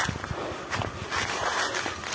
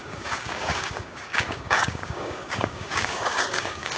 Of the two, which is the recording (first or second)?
first